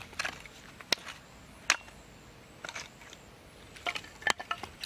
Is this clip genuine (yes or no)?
yes